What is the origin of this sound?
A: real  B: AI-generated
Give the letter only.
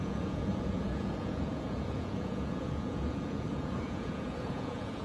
B